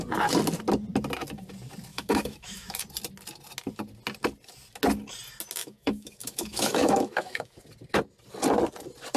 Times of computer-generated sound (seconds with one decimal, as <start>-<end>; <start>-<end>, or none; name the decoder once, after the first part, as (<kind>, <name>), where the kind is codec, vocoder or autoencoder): 1.9-2.8 (autoencoder, DAC-VAE); 5.6-7.6